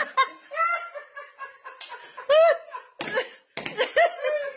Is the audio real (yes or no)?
yes